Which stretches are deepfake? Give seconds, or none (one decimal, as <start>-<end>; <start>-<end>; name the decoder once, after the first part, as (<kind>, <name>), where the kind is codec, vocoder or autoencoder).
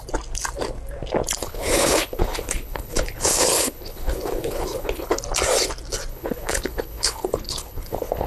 1.4-5.2 (codec, HILCodec); 6.1-8.3